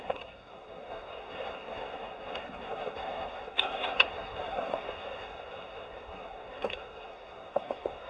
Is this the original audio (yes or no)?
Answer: no